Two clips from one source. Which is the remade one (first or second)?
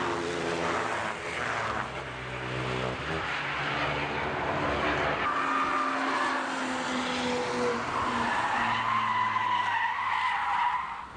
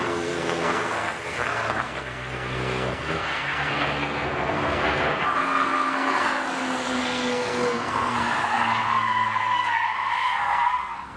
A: second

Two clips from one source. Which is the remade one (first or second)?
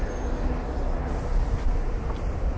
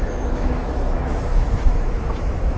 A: second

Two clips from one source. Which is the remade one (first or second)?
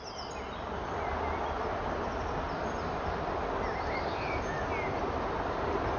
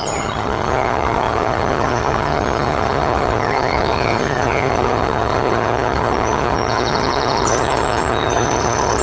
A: second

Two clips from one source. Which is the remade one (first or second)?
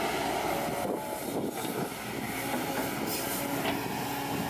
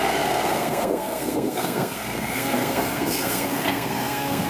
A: second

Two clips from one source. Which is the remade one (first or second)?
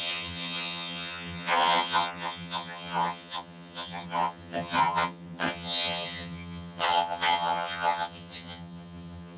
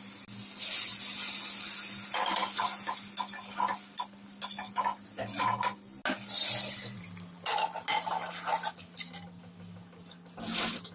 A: first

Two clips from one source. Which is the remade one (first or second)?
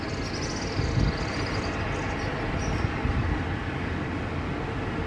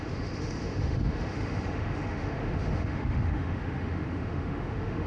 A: second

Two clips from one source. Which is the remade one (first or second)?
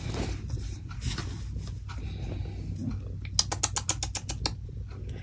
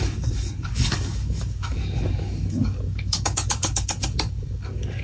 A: second